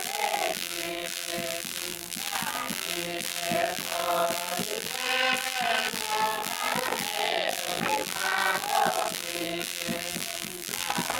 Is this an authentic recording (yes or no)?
no